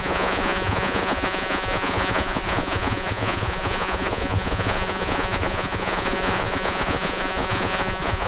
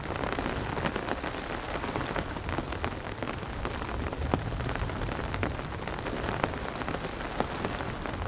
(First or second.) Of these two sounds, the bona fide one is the second